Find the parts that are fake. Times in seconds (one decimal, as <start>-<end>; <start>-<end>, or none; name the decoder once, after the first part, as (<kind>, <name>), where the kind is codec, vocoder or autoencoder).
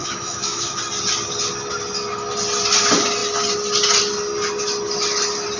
0.0-0.8 (autoencoder, DAC-VAE)